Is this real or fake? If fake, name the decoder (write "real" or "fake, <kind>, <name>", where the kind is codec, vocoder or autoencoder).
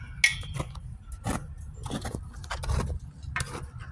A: real